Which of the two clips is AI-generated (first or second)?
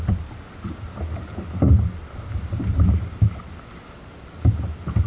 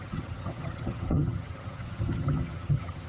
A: second